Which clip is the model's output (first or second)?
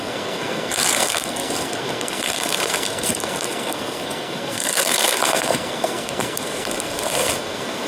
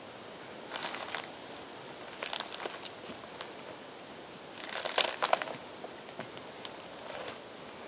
first